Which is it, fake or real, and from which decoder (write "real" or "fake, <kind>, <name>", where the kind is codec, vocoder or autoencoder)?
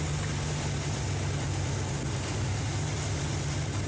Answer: real